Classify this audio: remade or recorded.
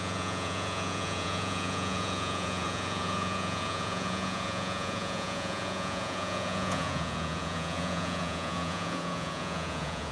remade